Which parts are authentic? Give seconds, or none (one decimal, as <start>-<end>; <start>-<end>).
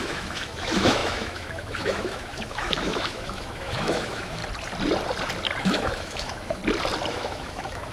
4.4-5.6; 6.6-7.1